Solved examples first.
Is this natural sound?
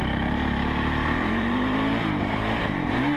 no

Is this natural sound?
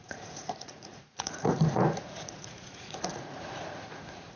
no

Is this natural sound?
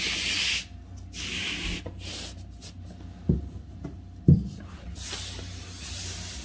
yes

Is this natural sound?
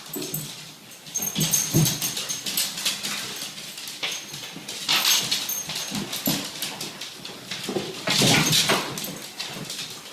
yes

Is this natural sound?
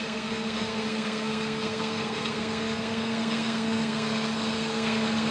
no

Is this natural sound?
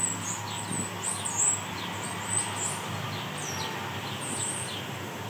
yes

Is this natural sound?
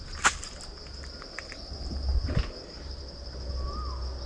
yes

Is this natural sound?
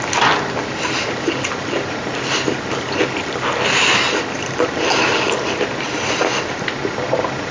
yes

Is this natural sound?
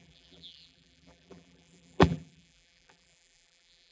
no